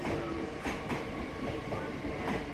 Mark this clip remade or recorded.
recorded